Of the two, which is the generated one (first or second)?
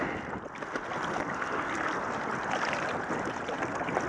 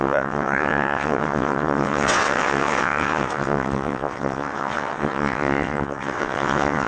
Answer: second